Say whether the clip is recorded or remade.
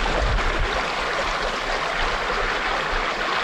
recorded